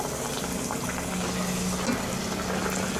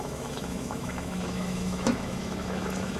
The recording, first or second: first